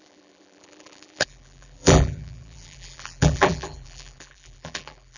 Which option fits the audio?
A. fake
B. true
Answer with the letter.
A